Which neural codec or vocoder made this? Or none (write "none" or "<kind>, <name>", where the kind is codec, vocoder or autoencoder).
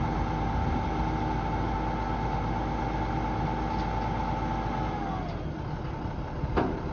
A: none